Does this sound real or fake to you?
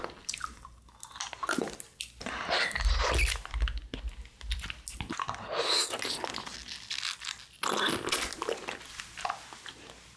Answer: real